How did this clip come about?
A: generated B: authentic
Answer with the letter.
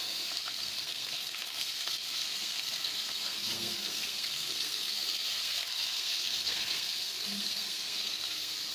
A